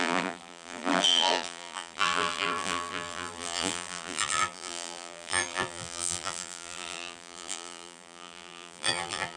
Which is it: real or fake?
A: fake